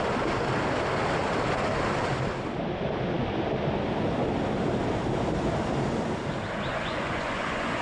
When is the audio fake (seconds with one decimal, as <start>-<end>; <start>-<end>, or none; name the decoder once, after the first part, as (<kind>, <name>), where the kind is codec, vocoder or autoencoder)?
6.7-7.8 (vocoder, Vocos)